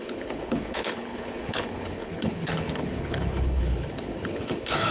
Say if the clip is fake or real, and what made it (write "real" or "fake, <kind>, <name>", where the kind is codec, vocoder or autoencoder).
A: fake, codec, HILCodec